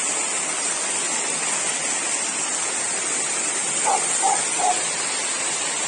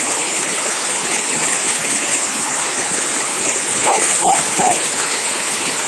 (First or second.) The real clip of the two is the first